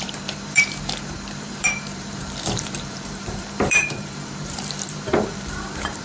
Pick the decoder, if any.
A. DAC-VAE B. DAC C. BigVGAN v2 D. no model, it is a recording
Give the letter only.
C